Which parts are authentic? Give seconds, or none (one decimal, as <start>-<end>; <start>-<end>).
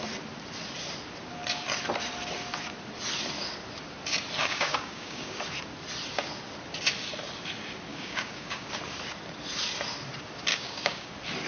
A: 0.0-4.4; 5.4-7.9; 8.7-10.5; 11.1-11.5